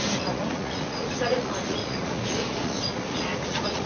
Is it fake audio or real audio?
fake